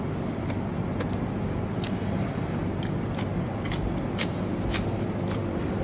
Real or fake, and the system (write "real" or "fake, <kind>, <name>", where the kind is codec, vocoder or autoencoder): fake, vocoder, BigVGAN v2